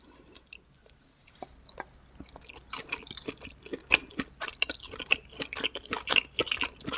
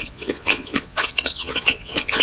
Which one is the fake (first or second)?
second